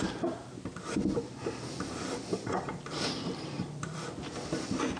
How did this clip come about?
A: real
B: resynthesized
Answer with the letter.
B